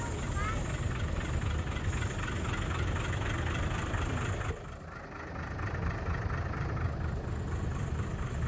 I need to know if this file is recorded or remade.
recorded